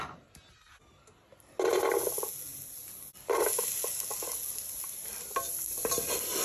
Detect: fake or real real